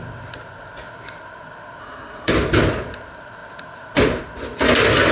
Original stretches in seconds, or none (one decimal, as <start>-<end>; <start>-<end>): 0.0-1.8; 2.3-5.1